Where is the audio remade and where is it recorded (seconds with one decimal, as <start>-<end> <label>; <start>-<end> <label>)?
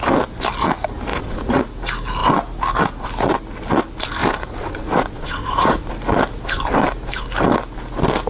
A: 0.0-1.1 recorded; 1.1-1.6 remade; 1.6-4.2 recorded; 4.2-5.9 remade; 5.9-8.3 recorded